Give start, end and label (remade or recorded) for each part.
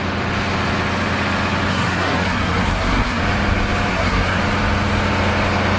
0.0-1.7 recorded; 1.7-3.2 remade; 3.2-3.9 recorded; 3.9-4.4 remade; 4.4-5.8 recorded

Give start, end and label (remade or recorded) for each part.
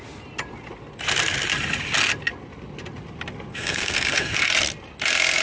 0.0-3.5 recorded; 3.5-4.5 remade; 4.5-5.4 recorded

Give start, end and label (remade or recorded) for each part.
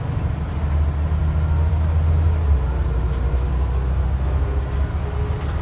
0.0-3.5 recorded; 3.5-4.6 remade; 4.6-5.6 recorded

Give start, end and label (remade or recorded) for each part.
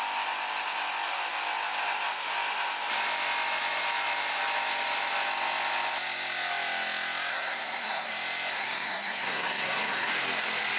0.0-7.3 recorded; 7.3-8.1 remade; 8.1-8.5 recorded; 8.5-10.1 remade; 10.1-10.8 recorded